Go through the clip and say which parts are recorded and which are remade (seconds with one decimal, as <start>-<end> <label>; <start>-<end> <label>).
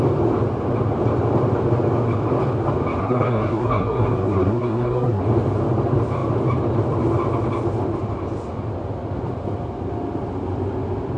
0.0-3.0 recorded; 3.0-5.2 remade; 5.2-11.2 recorded